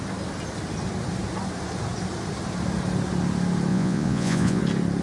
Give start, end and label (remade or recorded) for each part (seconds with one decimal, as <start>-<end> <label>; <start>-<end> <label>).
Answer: 0.0-3.7 recorded; 3.7-4.6 remade; 4.6-5.0 recorded